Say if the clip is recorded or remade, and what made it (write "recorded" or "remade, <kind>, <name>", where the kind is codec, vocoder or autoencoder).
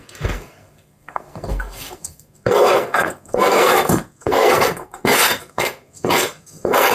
remade, codec, SNAC